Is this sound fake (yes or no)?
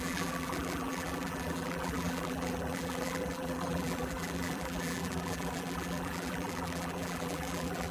yes